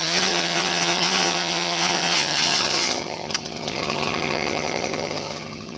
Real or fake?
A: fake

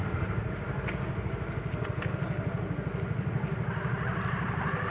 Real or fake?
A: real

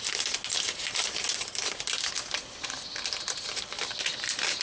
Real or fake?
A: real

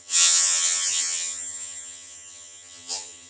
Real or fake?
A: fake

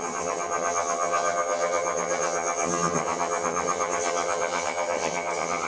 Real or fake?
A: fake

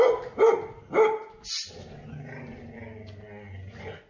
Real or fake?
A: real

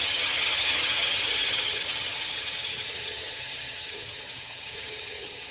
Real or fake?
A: fake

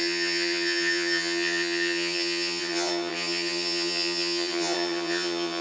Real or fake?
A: fake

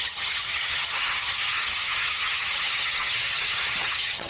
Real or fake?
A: fake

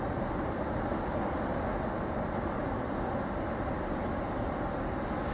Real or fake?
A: real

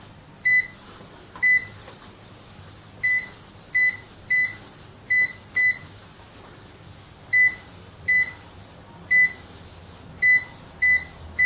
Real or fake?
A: real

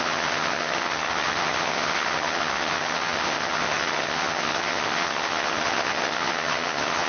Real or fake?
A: fake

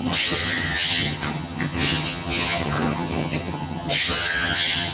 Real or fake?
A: fake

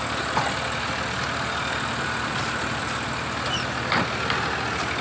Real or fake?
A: real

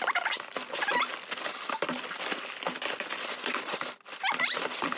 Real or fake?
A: real